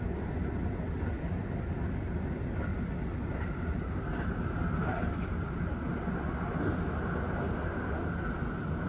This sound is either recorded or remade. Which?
recorded